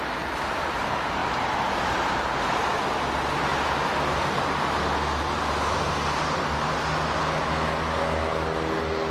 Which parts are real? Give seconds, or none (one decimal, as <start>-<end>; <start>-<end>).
0.0-9.1